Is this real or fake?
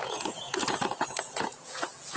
fake